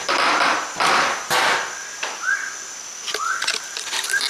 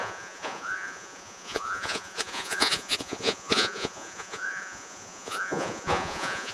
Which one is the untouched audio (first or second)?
first